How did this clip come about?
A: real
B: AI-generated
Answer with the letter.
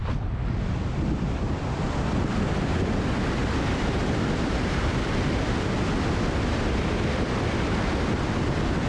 A